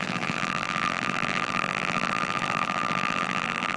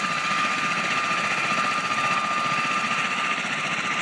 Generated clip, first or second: first